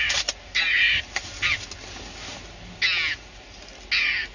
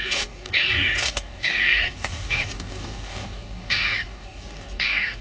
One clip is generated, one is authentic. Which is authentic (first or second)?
first